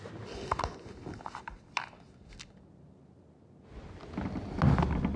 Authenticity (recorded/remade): recorded